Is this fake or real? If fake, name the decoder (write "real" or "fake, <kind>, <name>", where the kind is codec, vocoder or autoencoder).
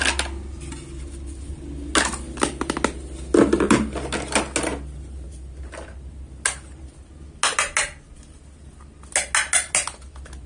real